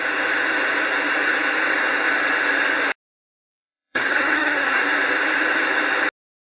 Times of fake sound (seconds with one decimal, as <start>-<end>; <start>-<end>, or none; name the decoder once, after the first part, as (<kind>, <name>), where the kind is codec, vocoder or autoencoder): 3.5-4.8 (codec, SNAC)